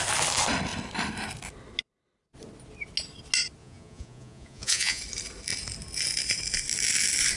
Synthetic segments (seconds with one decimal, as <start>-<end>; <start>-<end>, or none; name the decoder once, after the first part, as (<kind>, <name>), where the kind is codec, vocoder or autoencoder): 3.6-5.0 (vocoder, Vocos)